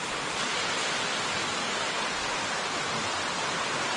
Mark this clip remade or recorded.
recorded